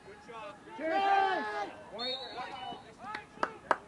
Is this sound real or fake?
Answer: real